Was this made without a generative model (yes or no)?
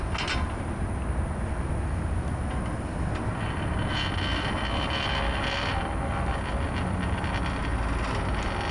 yes